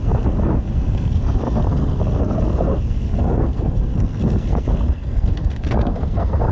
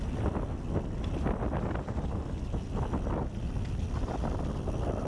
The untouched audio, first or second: second